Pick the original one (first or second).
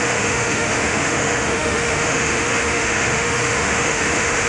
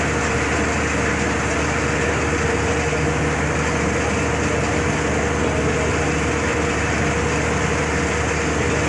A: second